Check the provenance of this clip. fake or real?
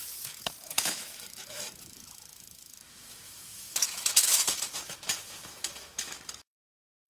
fake